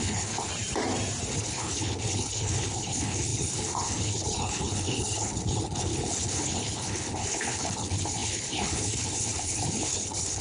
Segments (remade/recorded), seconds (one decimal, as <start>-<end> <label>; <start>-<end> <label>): 0.0-0.5 remade; 0.5-1.3 recorded; 1.3-10.4 remade